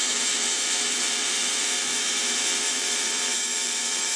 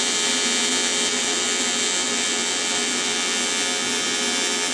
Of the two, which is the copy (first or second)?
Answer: first